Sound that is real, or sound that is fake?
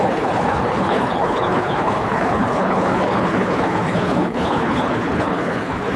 fake